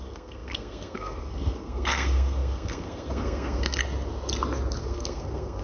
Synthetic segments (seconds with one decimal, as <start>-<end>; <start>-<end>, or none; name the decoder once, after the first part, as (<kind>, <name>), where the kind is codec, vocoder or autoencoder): 0.0-3.8 (codec, SNAC); 4.8-5.6

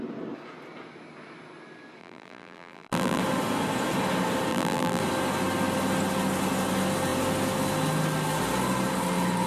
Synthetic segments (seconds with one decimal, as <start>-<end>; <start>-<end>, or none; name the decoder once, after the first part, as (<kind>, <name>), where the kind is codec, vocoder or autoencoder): 2.0-3.2 (vocoder, BigVGAN v2); 4.5-5.0